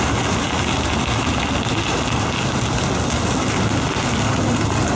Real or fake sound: real